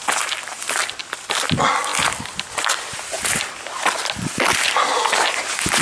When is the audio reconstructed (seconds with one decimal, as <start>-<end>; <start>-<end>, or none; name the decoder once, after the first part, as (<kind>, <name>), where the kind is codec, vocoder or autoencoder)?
none